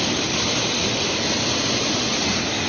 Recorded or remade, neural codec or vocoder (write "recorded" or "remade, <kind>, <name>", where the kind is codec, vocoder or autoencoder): recorded